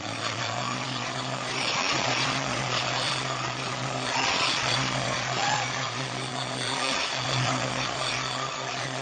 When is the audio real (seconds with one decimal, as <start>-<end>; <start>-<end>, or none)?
none